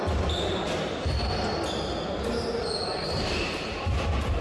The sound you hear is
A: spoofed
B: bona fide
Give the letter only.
B